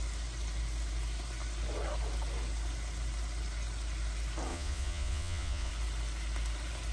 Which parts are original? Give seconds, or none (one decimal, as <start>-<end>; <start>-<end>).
0.0-4.5; 5.7-6.9